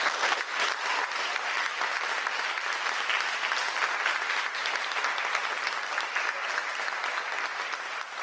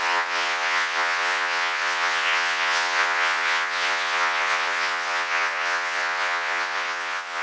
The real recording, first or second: first